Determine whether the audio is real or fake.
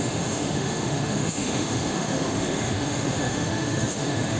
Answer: fake